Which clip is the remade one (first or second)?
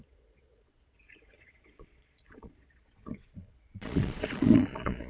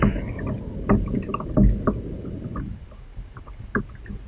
first